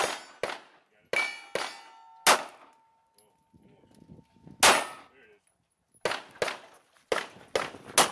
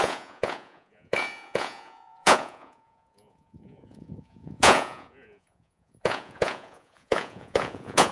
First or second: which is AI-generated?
second